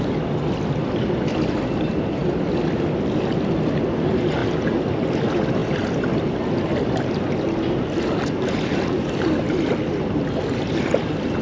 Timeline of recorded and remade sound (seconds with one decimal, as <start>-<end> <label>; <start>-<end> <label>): 0.0-11.4 recorded